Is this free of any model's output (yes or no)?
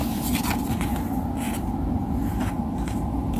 yes